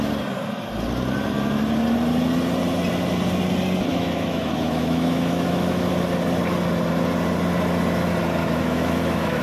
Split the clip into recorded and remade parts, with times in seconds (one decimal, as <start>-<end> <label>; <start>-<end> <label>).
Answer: 0.0-3.9 recorded; 3.9-5.9 remade; 5.9-8.4 recorded; 8.4-9.4 remade